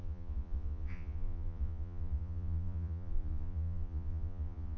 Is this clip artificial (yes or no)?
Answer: yes